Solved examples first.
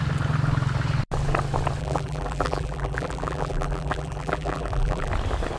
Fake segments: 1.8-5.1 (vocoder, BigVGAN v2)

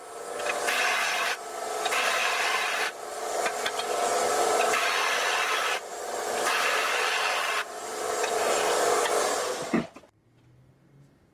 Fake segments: none

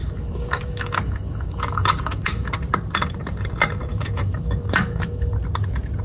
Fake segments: 0.0-2.5 (autoencoder, DAC-VAE); 3.9-5.3

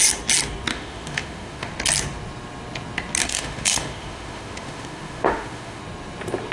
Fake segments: 0.7-1.7 (autoencoder, DAC-VAE); 3.2-5.8